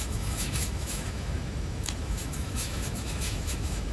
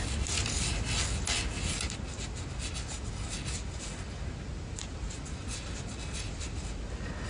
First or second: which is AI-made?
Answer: first